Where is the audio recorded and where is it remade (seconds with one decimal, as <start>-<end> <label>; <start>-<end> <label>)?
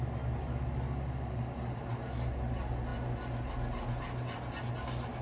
0.0-5.2 recorded